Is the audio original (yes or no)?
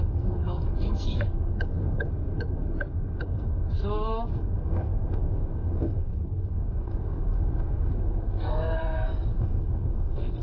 no